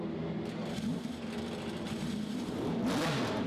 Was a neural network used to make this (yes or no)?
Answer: yes